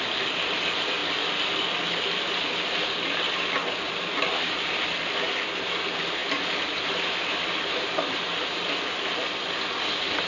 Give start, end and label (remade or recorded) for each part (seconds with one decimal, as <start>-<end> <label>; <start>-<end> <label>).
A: 0.0-10.3 recorded